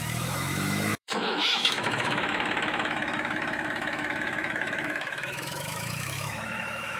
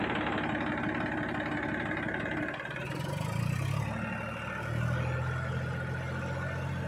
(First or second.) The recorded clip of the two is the second